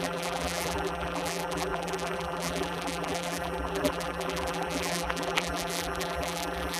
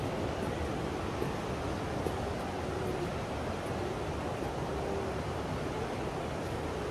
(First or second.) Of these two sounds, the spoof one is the first